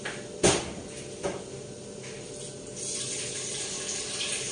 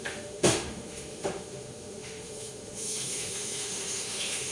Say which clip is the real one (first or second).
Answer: first